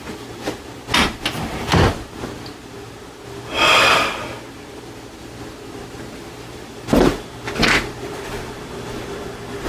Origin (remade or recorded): recorded